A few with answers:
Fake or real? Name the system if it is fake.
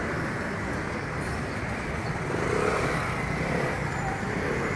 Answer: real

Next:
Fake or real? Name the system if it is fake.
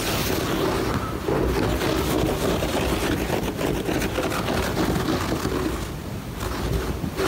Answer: real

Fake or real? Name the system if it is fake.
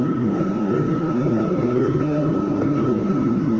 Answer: fake, codec, SNAC